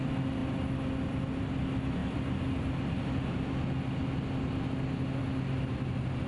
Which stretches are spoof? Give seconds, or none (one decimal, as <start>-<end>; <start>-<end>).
none